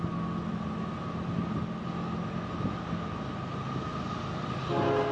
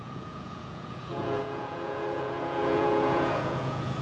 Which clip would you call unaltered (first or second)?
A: first